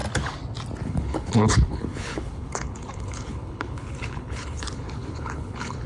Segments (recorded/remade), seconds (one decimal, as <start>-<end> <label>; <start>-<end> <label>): 0.0-0.8 recorded; 0.8-5.9 remade